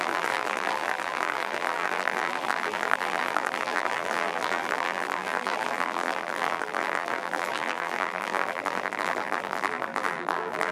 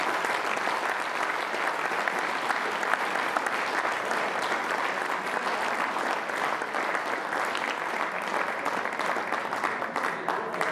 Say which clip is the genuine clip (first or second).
second